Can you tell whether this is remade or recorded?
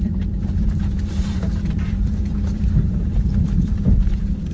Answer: remade